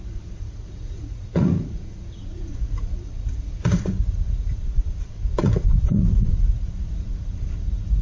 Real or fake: fake